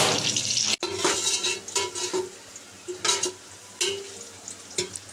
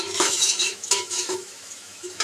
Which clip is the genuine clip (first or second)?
first